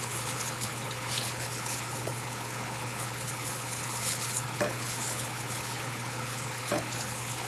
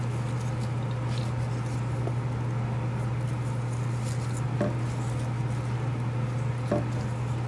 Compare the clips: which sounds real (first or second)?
second